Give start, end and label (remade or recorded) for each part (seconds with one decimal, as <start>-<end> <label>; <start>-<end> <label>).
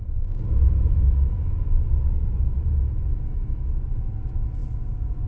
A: 0.0-5.3 recorded